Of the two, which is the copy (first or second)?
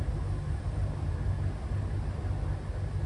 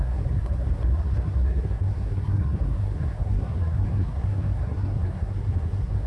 second